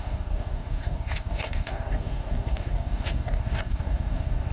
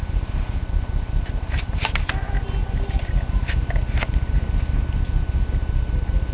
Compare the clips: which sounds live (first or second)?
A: second